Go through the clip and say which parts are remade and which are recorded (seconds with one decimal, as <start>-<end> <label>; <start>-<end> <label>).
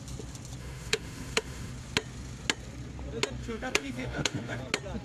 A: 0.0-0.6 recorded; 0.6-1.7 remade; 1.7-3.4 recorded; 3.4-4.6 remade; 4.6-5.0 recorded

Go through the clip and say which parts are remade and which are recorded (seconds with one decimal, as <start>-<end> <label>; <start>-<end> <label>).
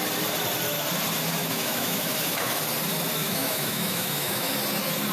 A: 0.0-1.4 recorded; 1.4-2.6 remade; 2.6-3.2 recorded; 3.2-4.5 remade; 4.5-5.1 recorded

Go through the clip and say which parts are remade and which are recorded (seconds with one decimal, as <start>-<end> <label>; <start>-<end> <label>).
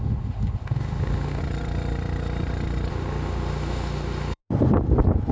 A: 0.0-1.4 remade; 1.4-2.9 recorded; 2.9-4.4 remade; 4.4-5.3 recorded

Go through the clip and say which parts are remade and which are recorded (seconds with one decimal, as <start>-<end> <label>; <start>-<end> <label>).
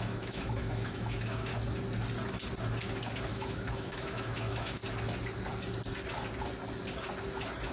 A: 0.0-1.5 remade; 1.5-3.3 recorded; 3.3-4.8 remade; 4.8-7.7 recorded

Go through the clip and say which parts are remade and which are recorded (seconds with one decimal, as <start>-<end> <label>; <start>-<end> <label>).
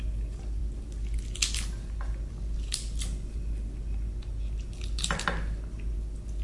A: 0.0-6.4 recorded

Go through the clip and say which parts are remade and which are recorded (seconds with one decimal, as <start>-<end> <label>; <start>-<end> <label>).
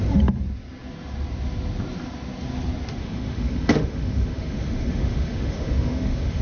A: 0.0-3.0 recorded; 3.0-6.4 remade